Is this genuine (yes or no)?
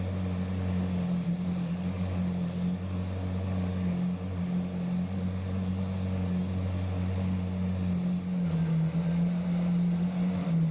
yes